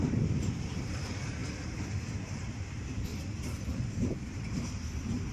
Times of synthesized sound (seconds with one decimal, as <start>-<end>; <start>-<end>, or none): 0.0-1.4; 2.1-3.1; 4.3-5.3